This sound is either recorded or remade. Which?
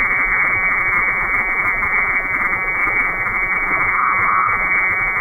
remade